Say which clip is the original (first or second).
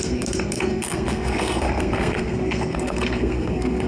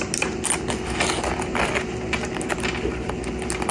second